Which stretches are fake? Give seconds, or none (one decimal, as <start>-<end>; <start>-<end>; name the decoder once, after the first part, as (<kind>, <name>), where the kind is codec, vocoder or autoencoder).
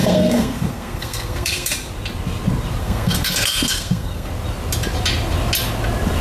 0.0-1.7 (codec, SNAC); 2.8-4.3